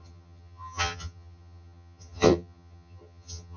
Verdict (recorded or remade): remade